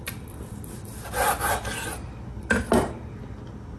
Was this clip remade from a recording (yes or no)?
no